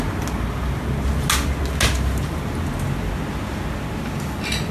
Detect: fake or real real